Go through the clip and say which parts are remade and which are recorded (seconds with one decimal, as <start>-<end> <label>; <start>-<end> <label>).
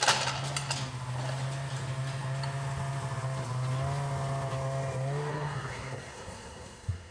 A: 0.0-5.3 recorded; 5.3-7.1 remade